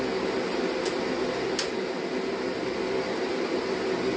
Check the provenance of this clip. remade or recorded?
recorded